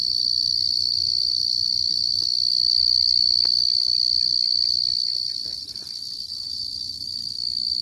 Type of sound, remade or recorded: recorded